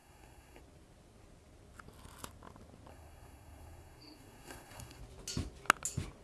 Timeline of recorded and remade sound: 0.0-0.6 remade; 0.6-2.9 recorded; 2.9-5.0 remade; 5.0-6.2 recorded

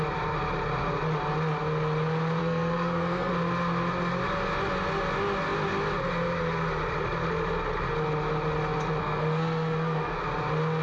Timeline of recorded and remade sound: 0.0-2.4 recorded; 2.4-3.3 remade; 3.3-9.0 recorded; 9.0-10.2 remade; 10.2-10.8 recorded

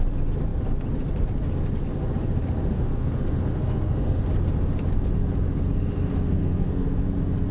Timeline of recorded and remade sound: 0.0-2.7 recorded; 2.7-4.2 remade; 4.2-6.3 recorded; 6.3-7.0 remade; 7.0-7.5 recorded

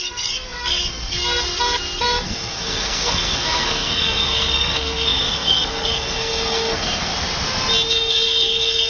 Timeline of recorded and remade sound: 0.0-7.1 remade; 7.1-7.9 recorded; 7.9-8.9 remade

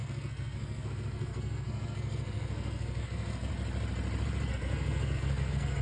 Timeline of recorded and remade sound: 0.0-3.5 remade; 3.5-4.5 recorded; 4.5-5.8 remade